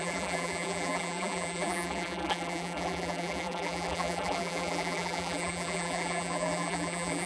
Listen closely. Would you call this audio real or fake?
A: fake